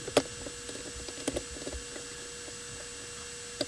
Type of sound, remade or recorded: recorded